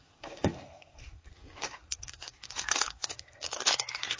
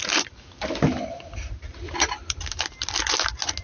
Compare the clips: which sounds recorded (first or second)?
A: second